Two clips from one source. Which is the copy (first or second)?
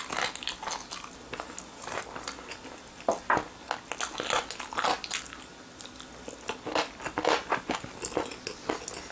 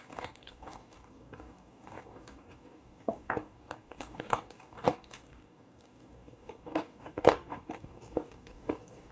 second